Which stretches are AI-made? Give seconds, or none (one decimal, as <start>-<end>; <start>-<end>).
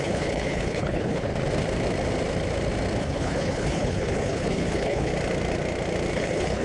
0.0-1.3; 3.0-5.1; 6.1-6.6